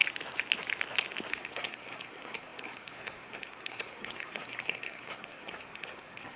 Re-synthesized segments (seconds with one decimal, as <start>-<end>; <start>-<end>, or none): 1.3-6.4